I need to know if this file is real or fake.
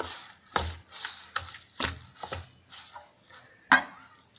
real